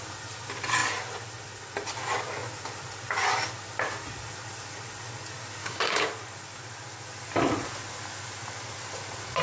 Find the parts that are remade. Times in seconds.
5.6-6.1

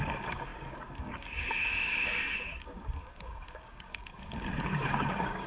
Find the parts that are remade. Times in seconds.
0.0-5.5

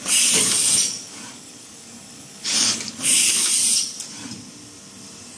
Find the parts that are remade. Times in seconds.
0.0-3.6

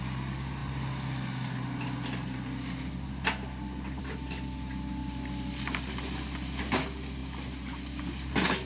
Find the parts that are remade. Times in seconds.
none